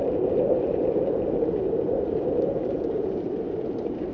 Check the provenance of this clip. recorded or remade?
remade